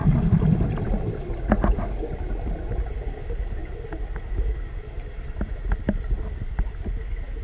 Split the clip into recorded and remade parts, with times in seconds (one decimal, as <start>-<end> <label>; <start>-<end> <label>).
0.0-7.4 recorded